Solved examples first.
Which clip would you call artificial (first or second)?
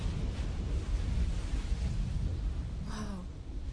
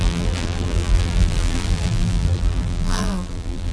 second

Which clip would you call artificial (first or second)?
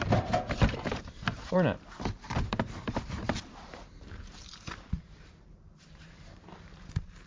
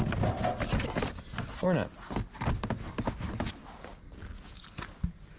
first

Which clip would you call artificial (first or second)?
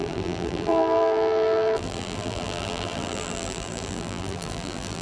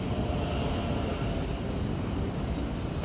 first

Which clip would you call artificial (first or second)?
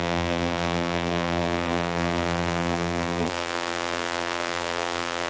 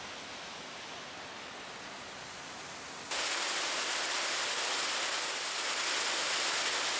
first